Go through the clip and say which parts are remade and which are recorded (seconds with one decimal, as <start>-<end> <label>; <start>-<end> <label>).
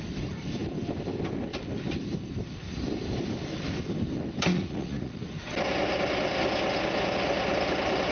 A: 0.0-4.5 recorded; 4.5-5.4 remade; 5.4-8.1 recorded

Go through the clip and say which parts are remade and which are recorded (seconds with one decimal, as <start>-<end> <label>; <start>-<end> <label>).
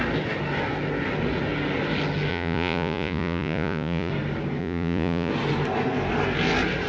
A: 0.0-2.3 recorded; 2.3-4.1 remade; 4.1-4.6 recorded; 4.6-5.3 remade; 5.3-6.9 recorded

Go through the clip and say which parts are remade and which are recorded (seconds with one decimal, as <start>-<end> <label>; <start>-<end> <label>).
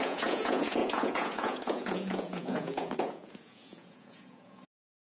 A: 0.0-5.2 remade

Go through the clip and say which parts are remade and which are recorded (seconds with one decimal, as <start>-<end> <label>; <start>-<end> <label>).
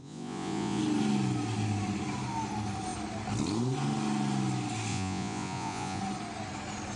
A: 0.0-0.8 remade; 0.8-4.9 recorded; 4.9-6.0 remade; 6.0-7.0 recorded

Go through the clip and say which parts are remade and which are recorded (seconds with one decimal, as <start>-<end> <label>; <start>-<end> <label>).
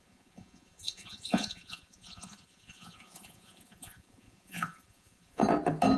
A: 0.0-5.4 remade; 5.4-6.0 recorded